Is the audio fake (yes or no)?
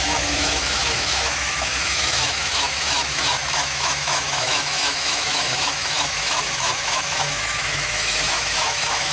yes